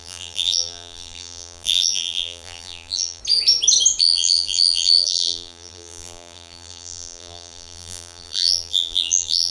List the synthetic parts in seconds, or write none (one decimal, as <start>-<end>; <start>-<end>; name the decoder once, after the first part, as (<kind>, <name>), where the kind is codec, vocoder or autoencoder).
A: 0.0-3.2 (vocoder, BigVGAN v2); 4.0-9.5